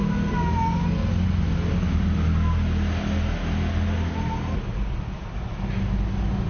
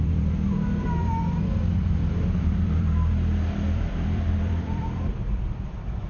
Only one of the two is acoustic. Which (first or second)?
first